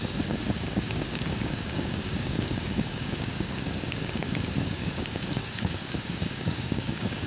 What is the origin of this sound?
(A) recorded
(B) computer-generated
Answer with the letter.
B